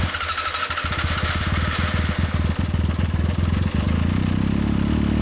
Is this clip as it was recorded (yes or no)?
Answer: yes